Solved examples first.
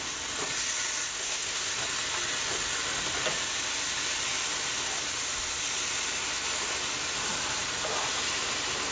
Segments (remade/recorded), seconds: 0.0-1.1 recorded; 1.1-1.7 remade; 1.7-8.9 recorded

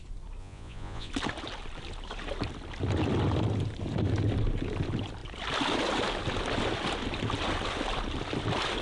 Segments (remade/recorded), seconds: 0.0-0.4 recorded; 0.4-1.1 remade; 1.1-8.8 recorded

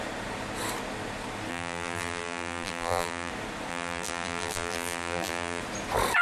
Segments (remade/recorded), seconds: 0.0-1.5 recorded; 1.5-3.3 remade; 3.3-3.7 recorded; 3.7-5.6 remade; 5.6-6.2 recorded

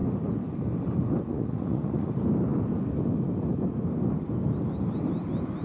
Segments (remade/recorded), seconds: 0.0-1.3 recorded; 1.3-2.1 remade; 2.1-5.6 recorded

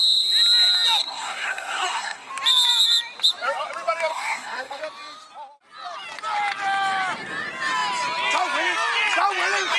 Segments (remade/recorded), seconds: 0.0-1.0 recorded; 1.0-2.3 remade; 2.3-4.1 recorded; 4.1-4.8 remade; 4.8-9.8 recorded